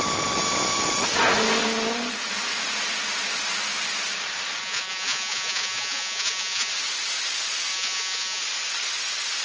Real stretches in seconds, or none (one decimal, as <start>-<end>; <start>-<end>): 0.0-4.6; 6.7-7.7; 8.4-9.4

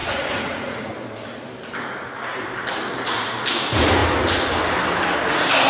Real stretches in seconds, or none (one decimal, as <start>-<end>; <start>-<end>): 0.9-5.7

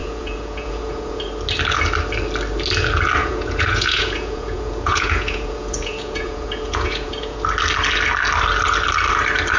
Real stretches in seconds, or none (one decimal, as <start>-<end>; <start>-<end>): 1.2-3.2; 7.4-9.6

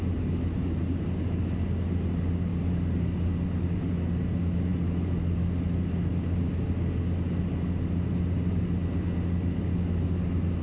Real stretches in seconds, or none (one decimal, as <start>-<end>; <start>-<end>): 0.0-10.6

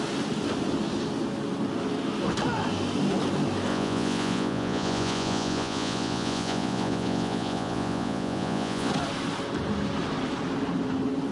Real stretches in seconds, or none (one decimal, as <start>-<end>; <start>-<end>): 0.0-3.7; 8.9-11.3

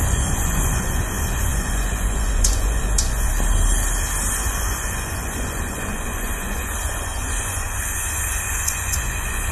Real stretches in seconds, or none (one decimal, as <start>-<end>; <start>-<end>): 3.3-4.3

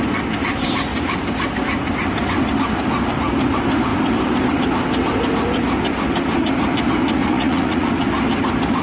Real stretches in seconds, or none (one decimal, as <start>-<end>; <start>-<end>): 0.0-7.2; 7.9-8.8